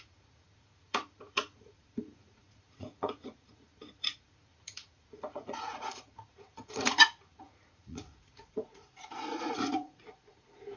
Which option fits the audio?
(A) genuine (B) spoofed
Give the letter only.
B